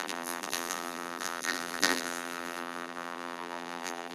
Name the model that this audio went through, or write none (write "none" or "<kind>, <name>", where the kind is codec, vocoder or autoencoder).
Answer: vocoder, BigVGAN v2